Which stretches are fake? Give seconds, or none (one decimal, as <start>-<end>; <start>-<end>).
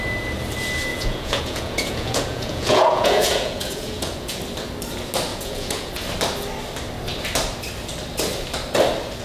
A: 0.9-4.4; 5.3-5.9